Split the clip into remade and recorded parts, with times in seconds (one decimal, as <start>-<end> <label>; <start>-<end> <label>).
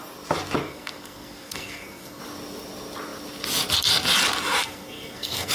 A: 0.0-0.6 recorded; 0.6-2.2 remade; 2.2-4.6 recorded; 4.6-5.5 remade